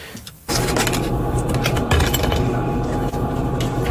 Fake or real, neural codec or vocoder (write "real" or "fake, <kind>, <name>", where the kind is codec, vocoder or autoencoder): real